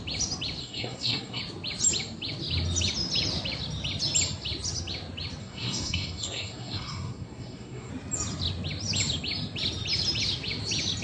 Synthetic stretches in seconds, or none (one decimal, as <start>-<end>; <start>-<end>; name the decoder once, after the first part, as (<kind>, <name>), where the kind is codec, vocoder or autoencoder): 0.6-1.4 (codec, SNAC); 5.4-7.9